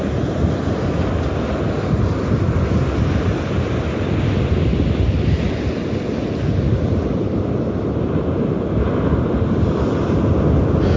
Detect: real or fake real